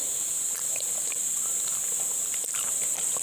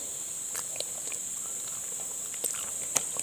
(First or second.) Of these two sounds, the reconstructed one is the first